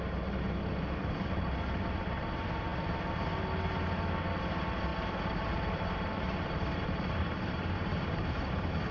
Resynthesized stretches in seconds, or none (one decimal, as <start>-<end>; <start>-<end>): 4.9-8.5